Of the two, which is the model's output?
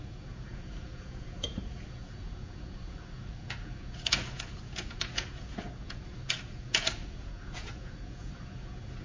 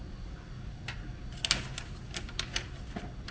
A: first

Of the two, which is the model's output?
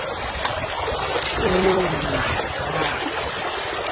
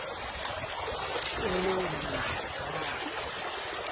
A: first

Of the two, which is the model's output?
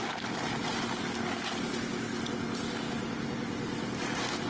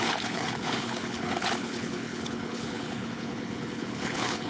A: second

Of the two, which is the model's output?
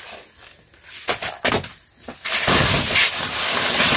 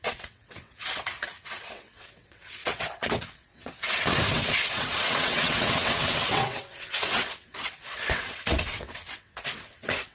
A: second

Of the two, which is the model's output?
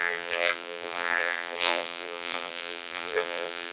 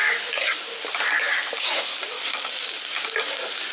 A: first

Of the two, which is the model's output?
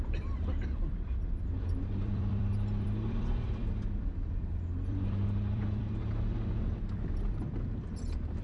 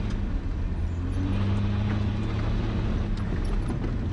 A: first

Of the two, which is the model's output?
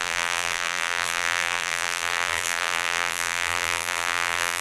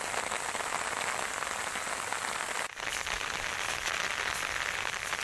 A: first